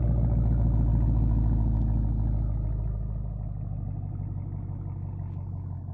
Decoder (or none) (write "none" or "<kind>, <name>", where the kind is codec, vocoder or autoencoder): none